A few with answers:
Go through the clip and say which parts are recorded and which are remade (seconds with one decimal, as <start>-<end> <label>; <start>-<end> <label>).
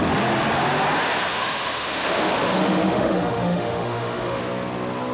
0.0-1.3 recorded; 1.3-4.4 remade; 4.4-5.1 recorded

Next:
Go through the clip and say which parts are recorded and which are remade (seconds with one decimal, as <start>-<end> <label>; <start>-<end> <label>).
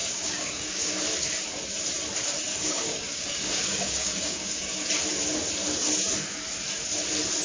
0.0-1.0 remade; 1.0-2.5 recorded; 2.5-4.9 remade; 4.9-7.4 recorded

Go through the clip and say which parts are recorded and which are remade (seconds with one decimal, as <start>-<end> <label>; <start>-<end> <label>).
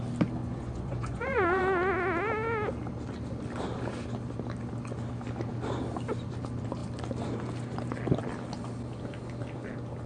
0.0-0.4 recorded; 0.4-1.6 remade; 1.6-10.1 recorded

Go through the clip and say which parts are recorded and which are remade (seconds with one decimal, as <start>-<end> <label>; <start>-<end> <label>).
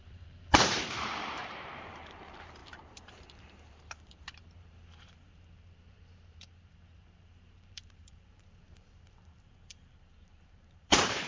0.0-11.3 remade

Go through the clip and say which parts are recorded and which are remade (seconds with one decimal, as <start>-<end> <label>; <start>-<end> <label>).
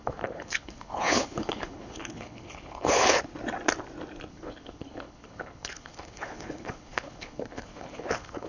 0.0-3.3 remade; 3.3-4.3 recorded; 4.3-8.5 remade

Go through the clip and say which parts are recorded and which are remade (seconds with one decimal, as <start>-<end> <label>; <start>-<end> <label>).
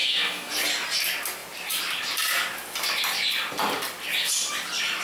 0.0-0.5 remade; 0.5-5.0 recorded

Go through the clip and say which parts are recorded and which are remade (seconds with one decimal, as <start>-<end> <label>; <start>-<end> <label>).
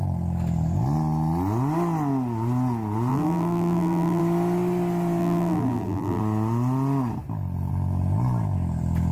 0.0-3.1 recorded; 3.1-4.2 remade; 4.2-5.2 recorded; 5.2-6.2 remade; 6.2-9.1 recorded